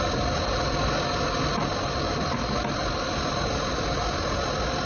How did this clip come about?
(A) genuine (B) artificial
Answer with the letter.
A